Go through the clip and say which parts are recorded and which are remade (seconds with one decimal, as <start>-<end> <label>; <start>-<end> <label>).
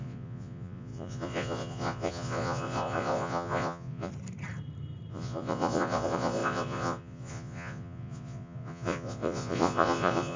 0.0-4.1 remade; 4.1-5.1 recorded; 5.1-10.4 remade